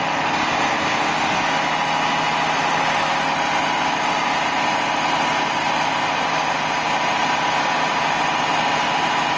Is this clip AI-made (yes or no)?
no